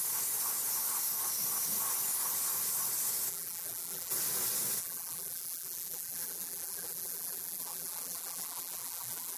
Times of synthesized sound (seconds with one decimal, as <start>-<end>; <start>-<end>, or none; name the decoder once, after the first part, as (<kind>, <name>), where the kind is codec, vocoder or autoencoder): 3.3-4.1 (vocoder, BigVGAN v2); 4.8-9.4